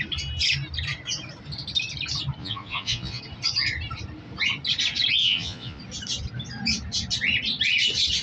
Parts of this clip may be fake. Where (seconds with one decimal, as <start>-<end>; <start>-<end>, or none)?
2.4-3.2; 5.2-5.8